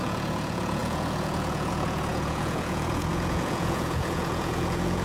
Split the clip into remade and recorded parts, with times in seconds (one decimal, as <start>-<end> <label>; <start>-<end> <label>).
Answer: 0.0-5.0 remade